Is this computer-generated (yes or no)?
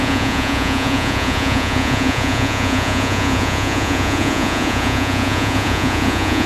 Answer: yes